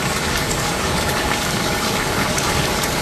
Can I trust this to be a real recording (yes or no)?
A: no